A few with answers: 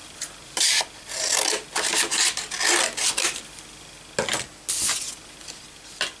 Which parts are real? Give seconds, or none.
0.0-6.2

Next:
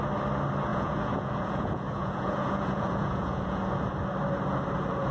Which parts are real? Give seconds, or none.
0.0-0.7; 3.8-5.1

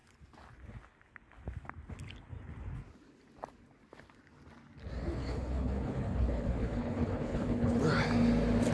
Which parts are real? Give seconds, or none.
0.0-5.2; 7.8-8.7

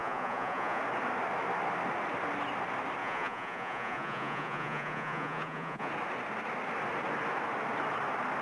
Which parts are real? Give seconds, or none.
0.8-3.0; 5.9-8.4

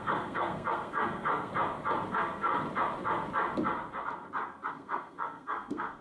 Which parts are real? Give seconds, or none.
1.5-2.1; 2.5-4.7